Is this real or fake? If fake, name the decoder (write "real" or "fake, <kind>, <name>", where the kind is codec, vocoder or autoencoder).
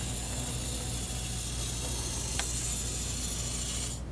real